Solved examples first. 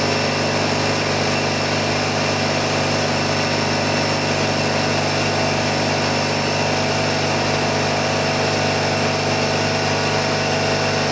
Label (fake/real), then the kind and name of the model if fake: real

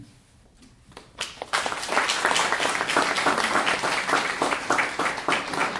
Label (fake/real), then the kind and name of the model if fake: real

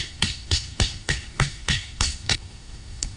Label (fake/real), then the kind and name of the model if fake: fake, codec, SNAC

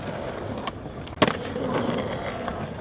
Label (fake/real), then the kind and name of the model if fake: real